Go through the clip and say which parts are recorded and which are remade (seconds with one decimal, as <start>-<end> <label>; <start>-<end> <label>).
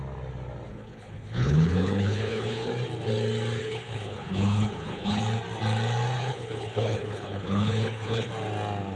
0.0-0.7 recorded; 0.7-2.7 remade; 2.7-3.6 recorded; 3.6-5.2 remade; 5.2-6.2 recorded; 6.2-8.3 remade; 8.3-9.0 recorded